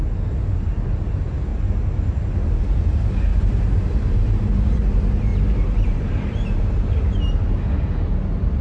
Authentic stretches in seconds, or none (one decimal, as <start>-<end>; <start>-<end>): 0.0-3.3; 4.8-5.3; 6.8-8.6